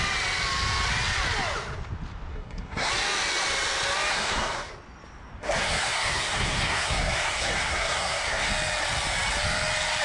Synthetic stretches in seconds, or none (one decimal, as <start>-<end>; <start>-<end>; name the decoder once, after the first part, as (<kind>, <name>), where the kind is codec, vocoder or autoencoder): 2.3-2.9 (codec, SNAC); 4.1-4.7; 5.4-8.5